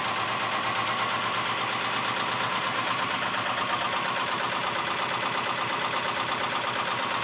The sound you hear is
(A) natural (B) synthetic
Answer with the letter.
A